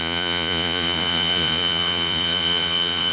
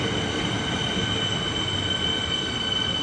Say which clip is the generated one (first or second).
first